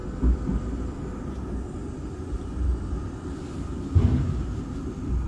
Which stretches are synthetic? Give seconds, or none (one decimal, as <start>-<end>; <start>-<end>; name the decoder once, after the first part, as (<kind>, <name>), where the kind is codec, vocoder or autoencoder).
none